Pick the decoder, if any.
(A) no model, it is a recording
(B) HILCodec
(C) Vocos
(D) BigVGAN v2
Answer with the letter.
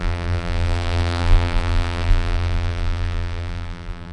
D